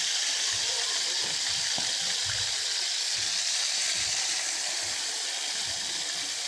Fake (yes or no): yes